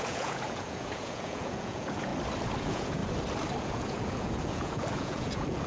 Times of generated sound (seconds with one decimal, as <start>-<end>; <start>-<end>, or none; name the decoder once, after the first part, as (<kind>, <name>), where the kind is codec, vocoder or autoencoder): 0.0-2.1 (vocoder, Vocos); 2.6-3.0; 3.6-5.7